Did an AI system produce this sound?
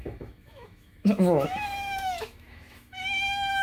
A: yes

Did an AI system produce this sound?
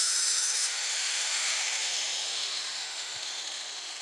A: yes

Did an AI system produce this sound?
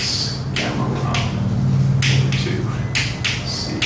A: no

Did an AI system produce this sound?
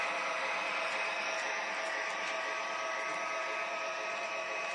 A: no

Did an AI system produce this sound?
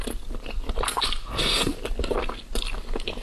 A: no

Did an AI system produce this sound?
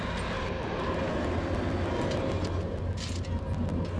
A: no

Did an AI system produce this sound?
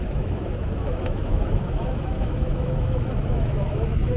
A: yes